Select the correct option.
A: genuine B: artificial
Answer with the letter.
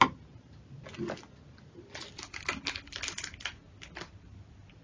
A